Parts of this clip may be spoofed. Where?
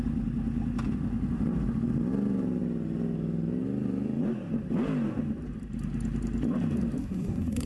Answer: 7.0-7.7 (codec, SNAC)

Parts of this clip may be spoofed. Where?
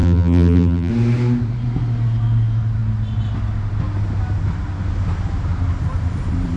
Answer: 0.0-0.9 (vocoder, BigVGAN v2)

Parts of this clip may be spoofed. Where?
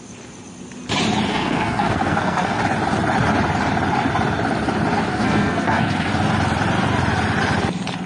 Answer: 1.3-2.6 (codec, SNAC); 5.1-6.1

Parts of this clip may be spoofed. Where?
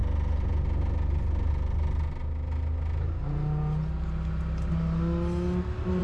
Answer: none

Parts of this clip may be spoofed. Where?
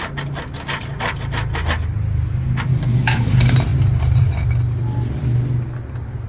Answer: 2.7-3.2 (autoencoder, DAC-VAE)